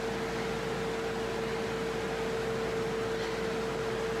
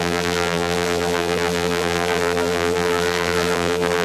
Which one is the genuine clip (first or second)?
first